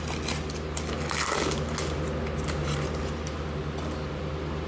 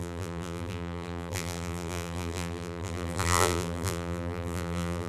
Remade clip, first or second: second